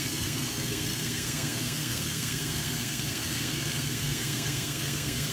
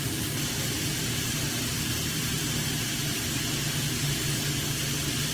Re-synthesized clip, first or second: first